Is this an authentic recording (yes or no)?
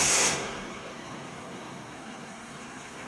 no